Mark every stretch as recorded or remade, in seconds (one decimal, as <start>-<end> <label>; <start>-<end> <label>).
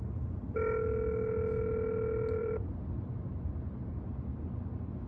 0.0-2.4 recorded; 2.4-4.0 remade; 4.0-5.1 recorded